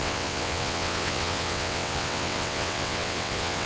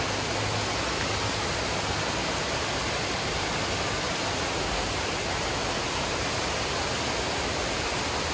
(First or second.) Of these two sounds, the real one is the second